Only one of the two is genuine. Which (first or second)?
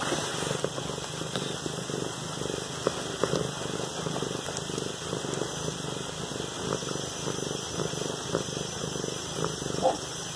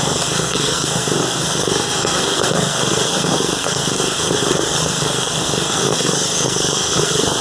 first